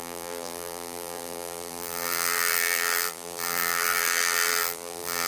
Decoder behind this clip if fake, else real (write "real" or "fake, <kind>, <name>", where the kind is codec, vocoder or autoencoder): fake, vocoder, BigVGAN v2